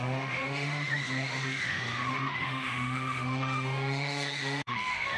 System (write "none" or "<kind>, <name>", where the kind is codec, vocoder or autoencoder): autoencoder, DAC-VAE